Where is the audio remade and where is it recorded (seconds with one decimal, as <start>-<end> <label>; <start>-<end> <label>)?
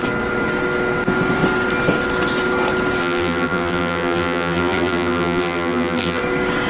0.0-3.0 recorded; 3.0-6.2 remade; 6.2-6.7 recorded